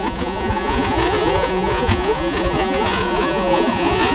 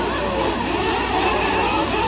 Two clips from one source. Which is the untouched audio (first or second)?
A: second